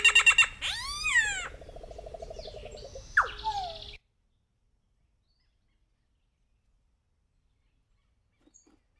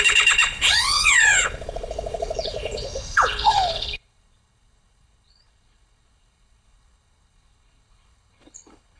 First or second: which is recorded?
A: first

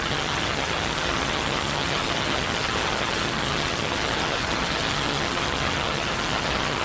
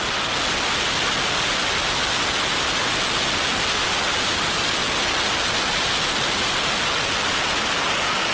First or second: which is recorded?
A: second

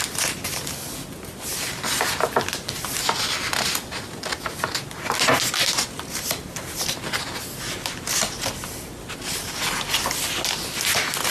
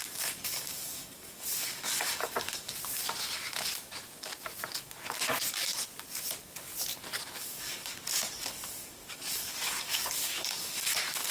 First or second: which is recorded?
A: first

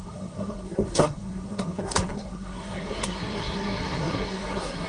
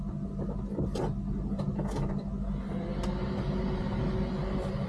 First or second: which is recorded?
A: second